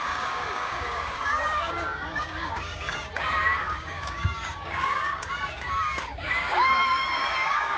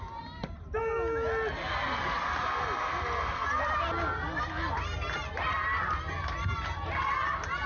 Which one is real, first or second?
second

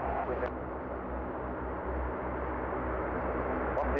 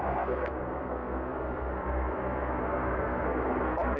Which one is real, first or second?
first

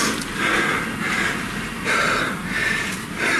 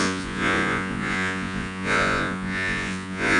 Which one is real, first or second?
first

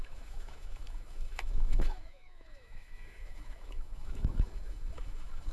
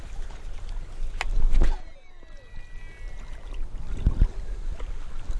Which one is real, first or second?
second